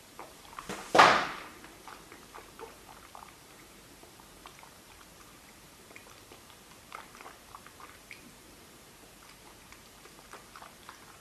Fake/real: fake